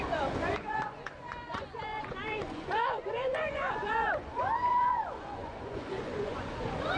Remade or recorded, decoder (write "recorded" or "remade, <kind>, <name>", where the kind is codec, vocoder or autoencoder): remade, vocoder, Vocos